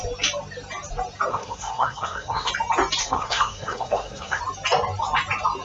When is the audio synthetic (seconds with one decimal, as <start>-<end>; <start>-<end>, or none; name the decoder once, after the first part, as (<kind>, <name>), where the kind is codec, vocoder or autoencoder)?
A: 1.3-2.5 (codec, SNAC); 3.0-4.4